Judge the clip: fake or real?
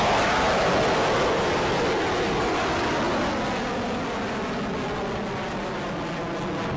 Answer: real